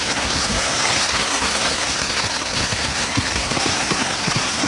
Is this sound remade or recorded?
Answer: remade